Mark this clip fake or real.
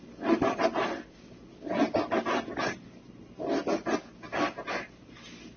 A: real